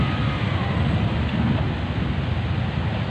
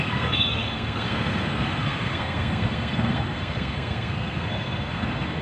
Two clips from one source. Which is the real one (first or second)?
first